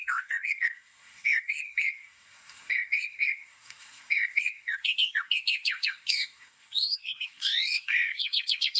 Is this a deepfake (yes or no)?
yes